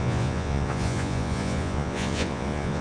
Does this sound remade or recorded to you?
remade